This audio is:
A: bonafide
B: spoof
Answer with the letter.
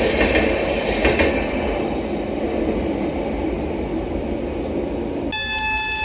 A